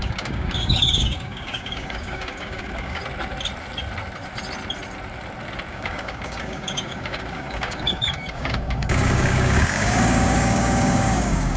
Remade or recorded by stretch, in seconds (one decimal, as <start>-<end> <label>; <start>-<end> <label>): 0.0-3.0 remade; 3.0-5.7 recorded; 5.7-11.6 remade